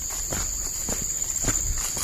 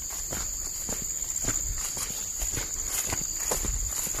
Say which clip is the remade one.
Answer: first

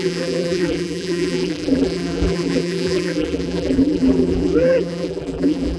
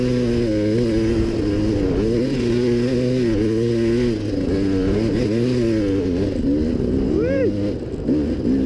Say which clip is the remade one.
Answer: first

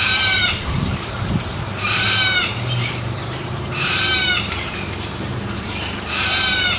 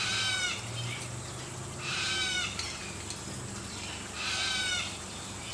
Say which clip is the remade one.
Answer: first